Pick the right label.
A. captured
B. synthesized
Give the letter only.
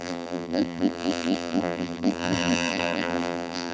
B